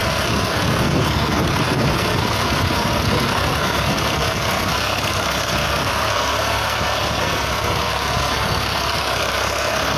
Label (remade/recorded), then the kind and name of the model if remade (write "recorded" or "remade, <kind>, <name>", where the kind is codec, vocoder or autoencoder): remade, codec, SNAC